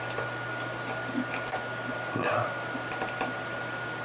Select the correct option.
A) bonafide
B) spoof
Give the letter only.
A